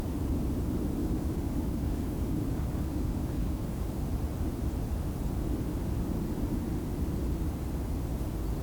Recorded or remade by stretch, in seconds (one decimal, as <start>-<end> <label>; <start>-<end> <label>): 0.0-1.0 recorded; 1.0-4.0 remade; 4.0-8.6 recorded